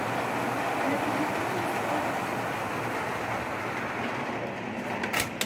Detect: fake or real real